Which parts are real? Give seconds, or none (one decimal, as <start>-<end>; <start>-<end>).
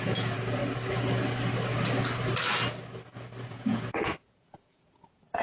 0.6-3.5